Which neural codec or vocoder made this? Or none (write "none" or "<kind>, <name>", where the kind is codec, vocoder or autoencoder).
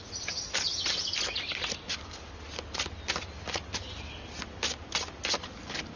none